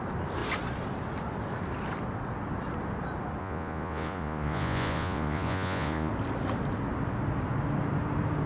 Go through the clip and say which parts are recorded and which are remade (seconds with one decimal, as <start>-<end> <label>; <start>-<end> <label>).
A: 0.0-3.4 recorded; 3.4-6.1 remade; 6.1-8.5 recorded